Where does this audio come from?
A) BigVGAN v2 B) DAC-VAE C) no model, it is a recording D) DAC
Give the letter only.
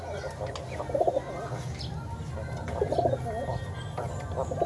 C